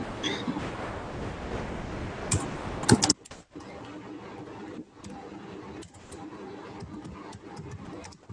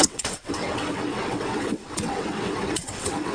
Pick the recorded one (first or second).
first